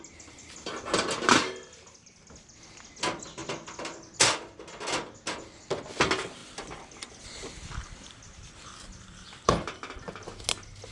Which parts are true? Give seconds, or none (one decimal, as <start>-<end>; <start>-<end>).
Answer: 0.0-10.9